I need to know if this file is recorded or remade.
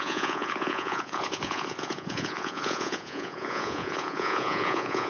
remade